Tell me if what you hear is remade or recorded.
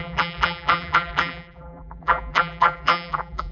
remade